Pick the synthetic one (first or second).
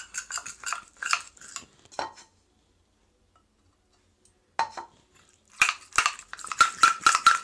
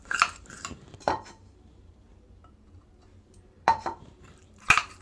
second